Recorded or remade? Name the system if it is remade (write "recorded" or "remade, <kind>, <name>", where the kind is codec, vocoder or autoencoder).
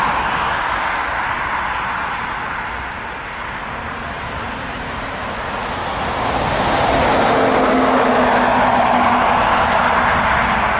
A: recorded